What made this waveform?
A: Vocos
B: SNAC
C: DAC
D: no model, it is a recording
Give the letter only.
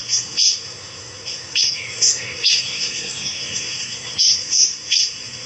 B